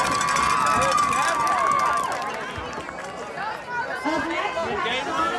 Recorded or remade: recorded